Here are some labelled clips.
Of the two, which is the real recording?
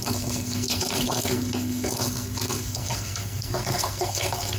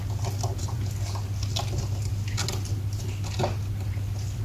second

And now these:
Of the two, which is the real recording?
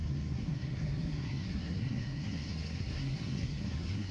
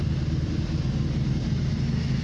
second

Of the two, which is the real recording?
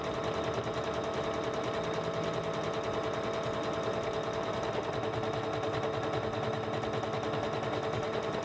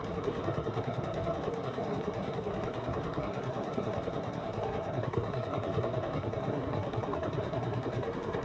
first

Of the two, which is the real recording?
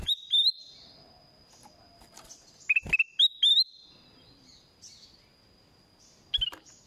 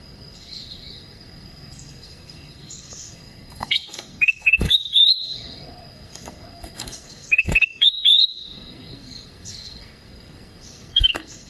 first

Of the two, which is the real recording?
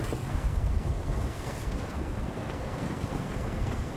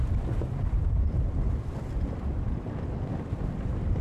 second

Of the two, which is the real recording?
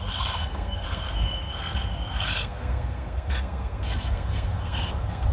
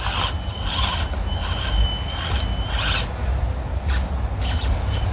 second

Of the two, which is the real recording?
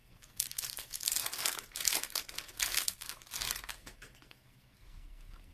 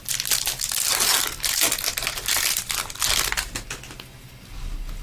second